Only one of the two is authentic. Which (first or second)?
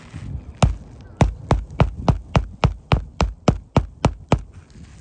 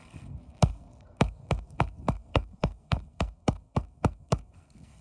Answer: first